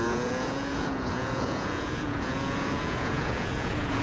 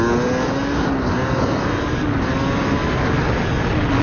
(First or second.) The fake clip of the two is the first